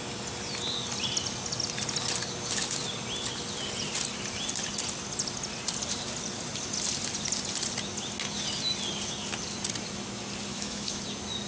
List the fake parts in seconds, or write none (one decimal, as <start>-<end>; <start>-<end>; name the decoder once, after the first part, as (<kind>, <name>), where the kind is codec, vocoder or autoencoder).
10.5-11.0 (autoencoder, DAC-VAE)